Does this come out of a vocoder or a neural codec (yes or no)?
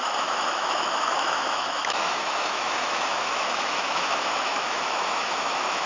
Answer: yes